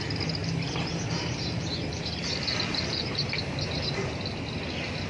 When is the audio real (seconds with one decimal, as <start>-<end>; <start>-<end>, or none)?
0.0-0.4; 2.2-5.1